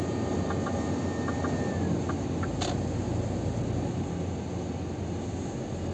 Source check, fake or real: real